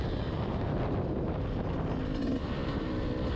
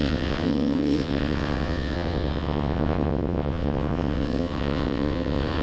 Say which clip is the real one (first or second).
first